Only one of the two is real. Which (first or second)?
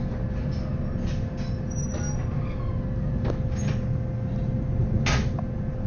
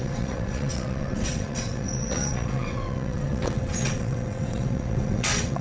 first